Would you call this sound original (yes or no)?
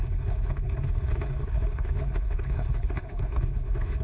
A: no